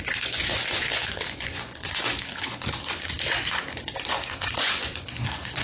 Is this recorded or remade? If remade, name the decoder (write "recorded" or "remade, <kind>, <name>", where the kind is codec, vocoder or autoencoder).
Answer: remade, vocoder, Vocos